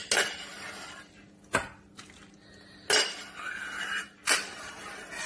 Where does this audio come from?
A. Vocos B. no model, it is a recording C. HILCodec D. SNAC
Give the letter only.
B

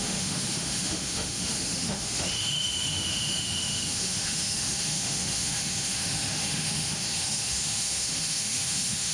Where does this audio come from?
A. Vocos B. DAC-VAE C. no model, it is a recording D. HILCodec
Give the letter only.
B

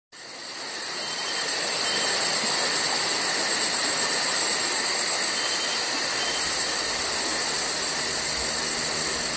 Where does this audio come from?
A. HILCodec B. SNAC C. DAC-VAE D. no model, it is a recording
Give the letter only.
D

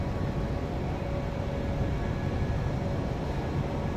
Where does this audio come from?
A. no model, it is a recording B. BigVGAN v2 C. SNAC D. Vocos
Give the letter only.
A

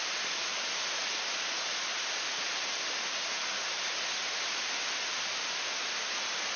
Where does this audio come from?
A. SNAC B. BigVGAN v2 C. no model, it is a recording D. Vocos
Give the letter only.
C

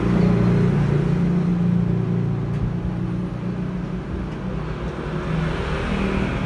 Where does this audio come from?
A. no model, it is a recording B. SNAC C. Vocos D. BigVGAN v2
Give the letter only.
A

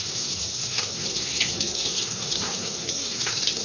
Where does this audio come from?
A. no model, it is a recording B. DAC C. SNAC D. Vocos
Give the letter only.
C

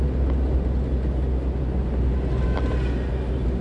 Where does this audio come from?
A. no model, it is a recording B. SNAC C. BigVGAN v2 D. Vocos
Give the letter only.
A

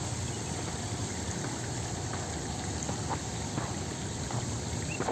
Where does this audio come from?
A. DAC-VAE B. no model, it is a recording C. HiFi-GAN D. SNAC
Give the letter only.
B